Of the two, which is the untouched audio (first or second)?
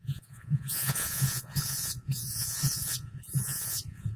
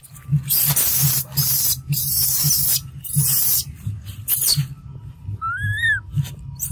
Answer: second